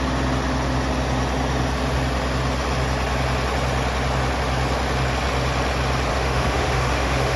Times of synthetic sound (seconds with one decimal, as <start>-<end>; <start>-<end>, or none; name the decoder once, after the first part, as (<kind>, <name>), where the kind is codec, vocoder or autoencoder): 6.1-7.4 (autoencoder, DAC-VAE)